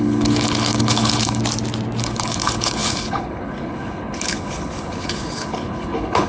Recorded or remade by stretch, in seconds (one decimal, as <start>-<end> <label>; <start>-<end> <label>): 0.0-1.4 remade; 1.4-2.0 recorded; 2.0-6.3 remade